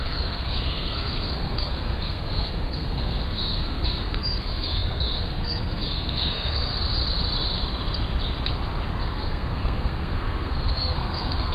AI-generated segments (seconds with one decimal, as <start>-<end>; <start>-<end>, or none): 0.0-6.7; 9.0-11.5